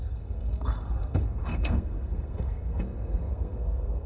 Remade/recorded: remade